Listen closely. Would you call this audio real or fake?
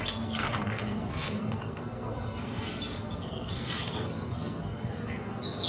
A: fake